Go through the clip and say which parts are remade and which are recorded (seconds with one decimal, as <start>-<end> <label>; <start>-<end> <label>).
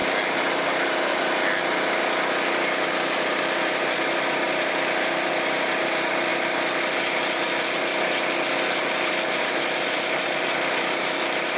0.0-11.6 recorded